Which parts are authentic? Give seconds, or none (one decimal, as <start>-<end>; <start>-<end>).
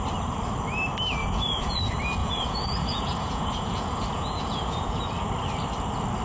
0.0-1.2; 1.8-2.2; 5.2-6.2